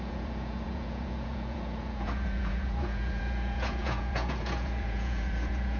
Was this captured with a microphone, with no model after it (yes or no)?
no